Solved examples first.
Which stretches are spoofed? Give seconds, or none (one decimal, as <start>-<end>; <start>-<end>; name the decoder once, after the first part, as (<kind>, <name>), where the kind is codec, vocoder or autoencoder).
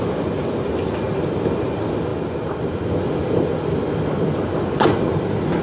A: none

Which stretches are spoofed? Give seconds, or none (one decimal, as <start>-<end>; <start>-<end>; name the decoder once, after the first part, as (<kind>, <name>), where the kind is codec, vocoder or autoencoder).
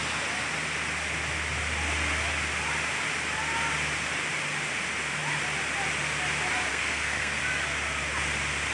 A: 6.7-7.4 (codec, SNAC)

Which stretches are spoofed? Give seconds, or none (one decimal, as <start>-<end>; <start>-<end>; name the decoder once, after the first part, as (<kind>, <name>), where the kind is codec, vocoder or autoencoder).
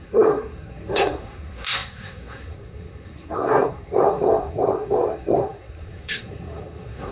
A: 0.0-7.1 (codec, SNAC)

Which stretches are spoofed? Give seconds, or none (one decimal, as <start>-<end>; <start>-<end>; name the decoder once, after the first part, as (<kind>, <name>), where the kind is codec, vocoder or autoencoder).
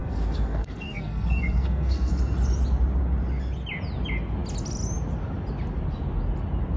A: 0.0-2.1 (codec, SNAC)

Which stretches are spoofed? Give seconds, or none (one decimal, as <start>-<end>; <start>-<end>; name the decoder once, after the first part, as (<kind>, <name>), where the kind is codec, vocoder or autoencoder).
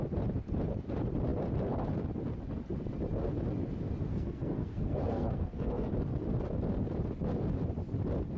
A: 4.1-5.9 (codec, SNAC)